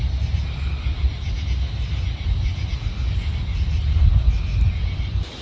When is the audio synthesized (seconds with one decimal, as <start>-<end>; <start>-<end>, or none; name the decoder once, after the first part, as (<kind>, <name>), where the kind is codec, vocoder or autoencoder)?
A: none